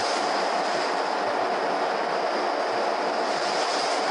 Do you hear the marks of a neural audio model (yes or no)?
no